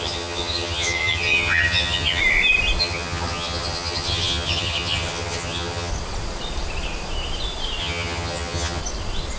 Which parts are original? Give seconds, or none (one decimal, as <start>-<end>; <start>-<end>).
2.2-2.8; 5.9-7.8; 8.8-9.4